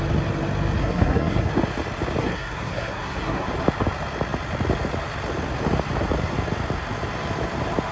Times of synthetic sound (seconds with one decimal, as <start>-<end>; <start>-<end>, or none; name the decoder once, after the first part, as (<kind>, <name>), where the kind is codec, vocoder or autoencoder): 0.8-1.5 (codec, SNAC); 2.2-3.5